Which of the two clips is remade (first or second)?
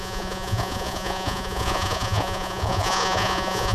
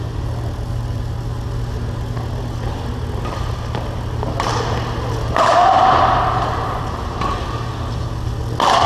first